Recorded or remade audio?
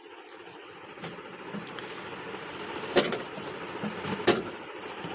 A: recorded